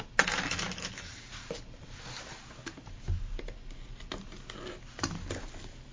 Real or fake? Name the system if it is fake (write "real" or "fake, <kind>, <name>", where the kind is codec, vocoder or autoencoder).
real